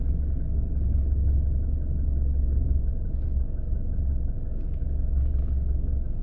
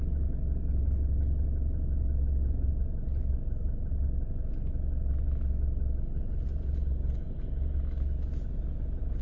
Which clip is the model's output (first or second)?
first